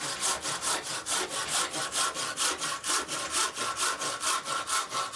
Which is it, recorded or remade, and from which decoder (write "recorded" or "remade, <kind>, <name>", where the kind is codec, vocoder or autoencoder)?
recorded